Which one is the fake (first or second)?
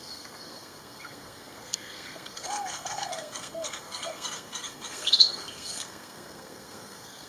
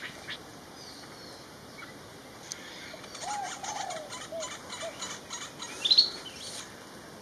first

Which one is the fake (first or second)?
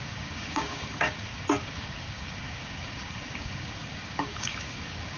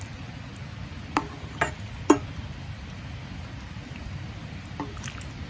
first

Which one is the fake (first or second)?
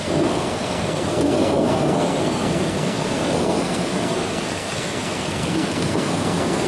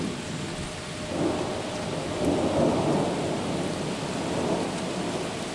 first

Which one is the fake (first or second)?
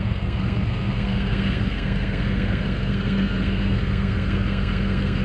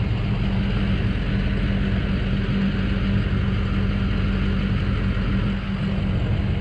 first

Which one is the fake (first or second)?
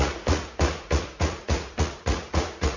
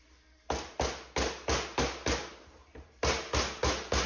first